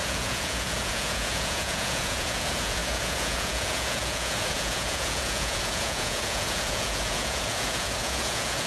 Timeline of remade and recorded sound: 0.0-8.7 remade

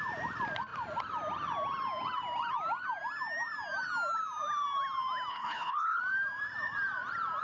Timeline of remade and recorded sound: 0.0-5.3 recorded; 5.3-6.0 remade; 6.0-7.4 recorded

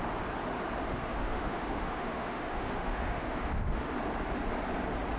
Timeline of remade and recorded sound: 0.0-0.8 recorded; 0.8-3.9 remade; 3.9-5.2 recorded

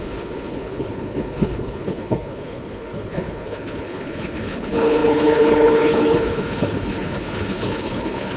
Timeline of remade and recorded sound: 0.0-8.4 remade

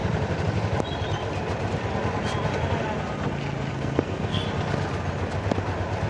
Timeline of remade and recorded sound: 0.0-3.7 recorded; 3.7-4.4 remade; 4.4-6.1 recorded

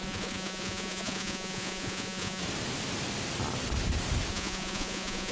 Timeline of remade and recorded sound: 0.0-2.4 remade; 2.4-4.3 recorded; 4.3-5.3 remade

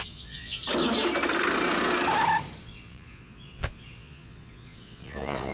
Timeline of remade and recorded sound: 0.0-0.6 remade; 0.6-2.6 recorded; 2.6-5.5 remade